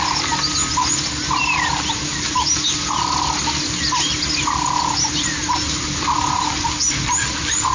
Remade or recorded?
recorded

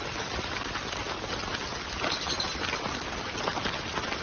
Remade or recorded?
recorded